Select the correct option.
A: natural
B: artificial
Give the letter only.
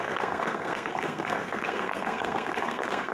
B